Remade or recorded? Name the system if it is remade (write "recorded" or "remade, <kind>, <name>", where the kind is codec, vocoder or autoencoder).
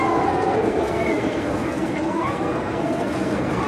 remade, codec, SNAC